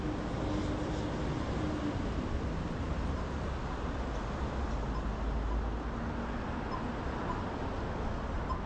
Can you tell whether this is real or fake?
real